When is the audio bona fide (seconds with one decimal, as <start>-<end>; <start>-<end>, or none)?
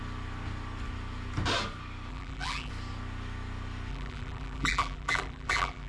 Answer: 0.0-2.1; 2.7-3.9